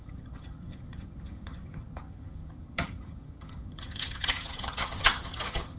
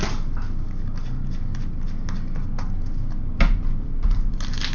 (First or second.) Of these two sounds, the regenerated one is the first